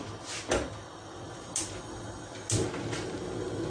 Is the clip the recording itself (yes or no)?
yes